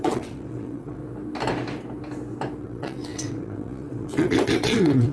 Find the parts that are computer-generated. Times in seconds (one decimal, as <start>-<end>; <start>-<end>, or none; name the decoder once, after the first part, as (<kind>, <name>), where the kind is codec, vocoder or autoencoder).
0.0-1.0 (vocoder, WaveNeXt); 2.6-5.1